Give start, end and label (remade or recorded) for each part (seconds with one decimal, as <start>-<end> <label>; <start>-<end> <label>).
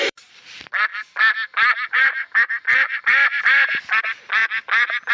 0.0-0.9 remade; 0.9-4.0 recorded; 4.0-4.4 remade; 4.4-5.1 recorded